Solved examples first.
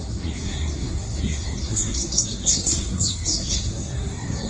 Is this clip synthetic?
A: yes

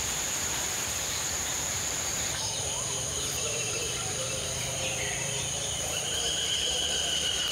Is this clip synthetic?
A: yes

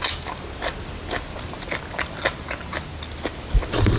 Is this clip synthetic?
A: no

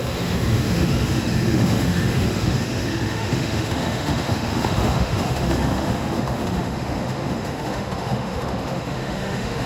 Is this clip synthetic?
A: yes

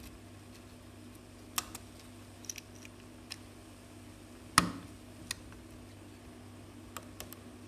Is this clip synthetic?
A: no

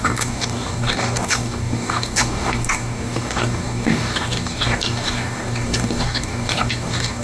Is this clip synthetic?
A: yes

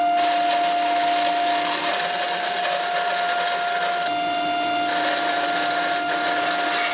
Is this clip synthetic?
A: no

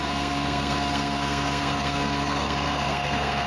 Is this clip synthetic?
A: yes